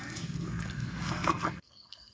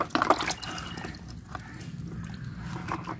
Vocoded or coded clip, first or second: first